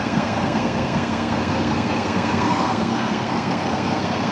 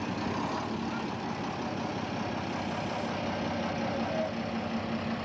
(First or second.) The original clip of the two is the second